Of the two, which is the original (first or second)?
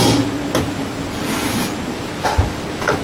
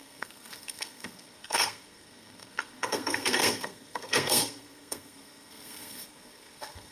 first